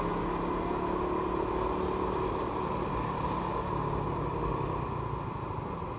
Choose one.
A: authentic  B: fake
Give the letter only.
A